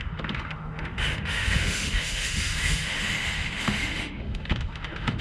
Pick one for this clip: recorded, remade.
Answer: remade